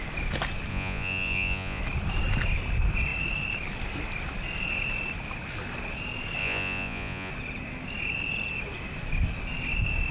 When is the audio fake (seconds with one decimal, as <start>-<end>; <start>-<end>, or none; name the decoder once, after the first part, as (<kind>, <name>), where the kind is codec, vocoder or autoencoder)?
0.7-1.8 (vocoder, Vocos); 6.4-7.3

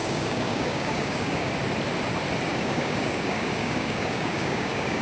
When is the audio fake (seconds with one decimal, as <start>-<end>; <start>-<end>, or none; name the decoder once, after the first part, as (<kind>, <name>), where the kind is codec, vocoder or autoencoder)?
0.0-1.5 (codec, DAC); 2.5-5.0